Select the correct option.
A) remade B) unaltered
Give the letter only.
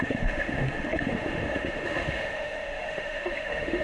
A